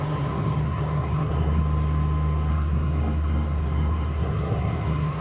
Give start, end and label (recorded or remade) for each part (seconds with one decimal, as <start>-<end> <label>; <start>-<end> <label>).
0.0-1.6 remade; 1.6-2.5 recorded; 2.5-5.2 remade